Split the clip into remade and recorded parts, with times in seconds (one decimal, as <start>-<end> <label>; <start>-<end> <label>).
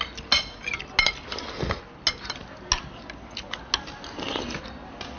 0.0-5.2 recorded